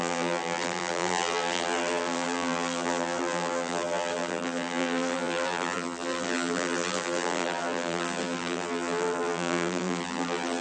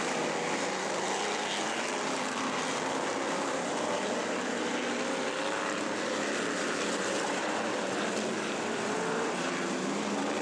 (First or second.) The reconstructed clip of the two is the first